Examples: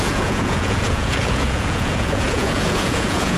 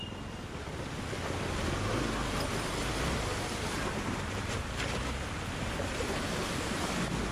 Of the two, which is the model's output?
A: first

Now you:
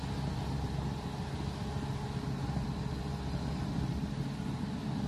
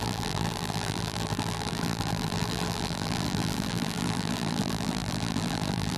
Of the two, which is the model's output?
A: second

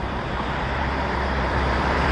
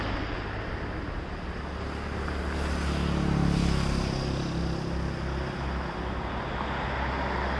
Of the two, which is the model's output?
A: first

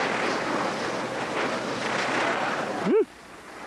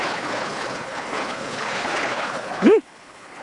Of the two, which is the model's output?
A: second